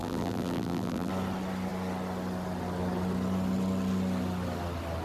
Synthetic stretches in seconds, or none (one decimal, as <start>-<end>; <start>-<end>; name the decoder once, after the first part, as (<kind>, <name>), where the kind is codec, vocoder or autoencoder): 0.0-1.1 (vocoder, BigVGAN v2)